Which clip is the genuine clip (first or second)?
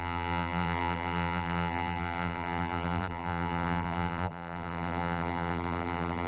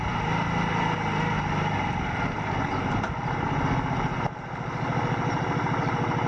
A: second